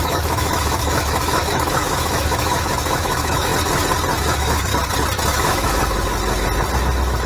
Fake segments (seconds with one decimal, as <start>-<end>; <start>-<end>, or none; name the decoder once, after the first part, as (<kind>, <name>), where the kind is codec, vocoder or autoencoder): 0.0-3.5 (autoencoder, DAC-VAE); 4.2-4.7; 5.3-5.8

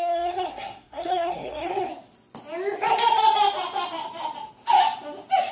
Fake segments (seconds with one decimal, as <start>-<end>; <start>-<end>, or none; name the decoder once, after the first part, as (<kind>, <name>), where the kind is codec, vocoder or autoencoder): 0.0-1.9 (codec, SNAC)